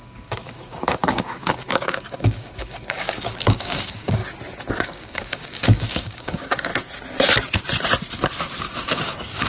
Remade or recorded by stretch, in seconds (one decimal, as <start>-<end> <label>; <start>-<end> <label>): 0.0-4.2 remade; 4.2-4.7 recorded; 4.7-6.7 remade; 6.7-8.6 recorded; 8.6-9.5 remade